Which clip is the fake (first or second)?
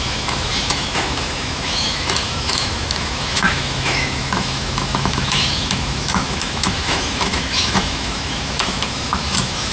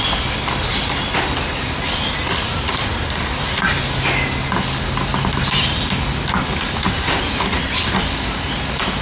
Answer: first